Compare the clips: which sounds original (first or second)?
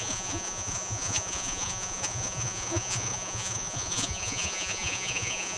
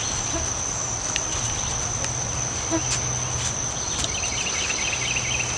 second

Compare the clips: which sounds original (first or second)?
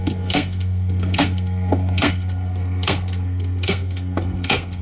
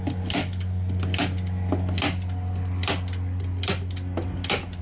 second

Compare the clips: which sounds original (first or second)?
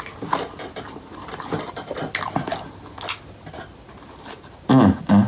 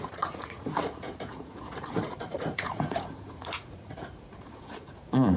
first